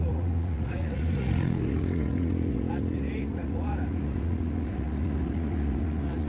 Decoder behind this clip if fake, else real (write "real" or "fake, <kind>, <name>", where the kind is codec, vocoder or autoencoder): fake, vocoder, Vocos